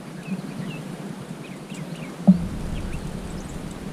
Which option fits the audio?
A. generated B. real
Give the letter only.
A